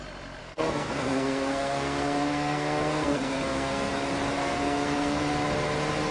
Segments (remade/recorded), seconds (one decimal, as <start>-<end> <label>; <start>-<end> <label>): 0.0-0.4 recorded; 0.4-3.9 remade; 3.9-4.4 recorded; 4.4-5.2 remade; 5.2-6.1 recorded